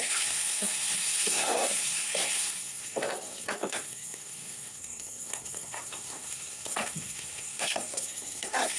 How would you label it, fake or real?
fake